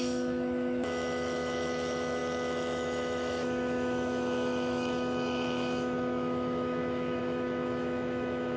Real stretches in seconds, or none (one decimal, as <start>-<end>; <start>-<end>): none